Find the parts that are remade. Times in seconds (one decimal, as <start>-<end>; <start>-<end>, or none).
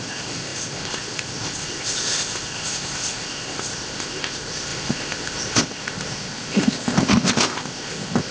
0.0-8.3